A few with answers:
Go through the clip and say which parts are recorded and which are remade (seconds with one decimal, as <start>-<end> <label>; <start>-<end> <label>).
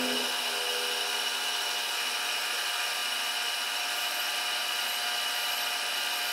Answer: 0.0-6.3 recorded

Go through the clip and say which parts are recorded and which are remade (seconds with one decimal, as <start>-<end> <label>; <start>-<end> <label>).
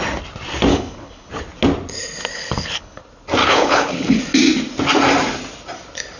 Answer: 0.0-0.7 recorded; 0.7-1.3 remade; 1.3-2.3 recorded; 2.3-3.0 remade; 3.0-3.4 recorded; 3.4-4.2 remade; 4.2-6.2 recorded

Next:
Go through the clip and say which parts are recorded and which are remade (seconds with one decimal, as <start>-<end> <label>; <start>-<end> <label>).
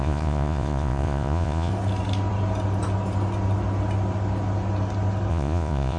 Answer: 0.0-1.7 remade; 1.7-5.3 recorded; 5.3-6.0 remade